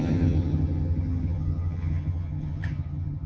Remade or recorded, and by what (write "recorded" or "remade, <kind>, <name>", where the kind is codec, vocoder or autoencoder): remade, vocoder, HiFi-GAN